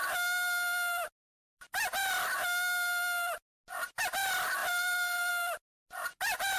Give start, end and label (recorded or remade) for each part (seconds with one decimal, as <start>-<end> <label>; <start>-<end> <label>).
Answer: 0.0-4.6 recorded; 4.6-5.3 remade; 5.3-6.6 recorded